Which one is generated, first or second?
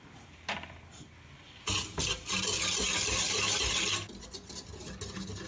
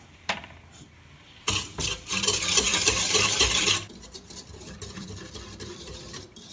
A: second